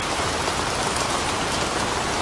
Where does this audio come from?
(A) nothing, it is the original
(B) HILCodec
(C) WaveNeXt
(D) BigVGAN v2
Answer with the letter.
A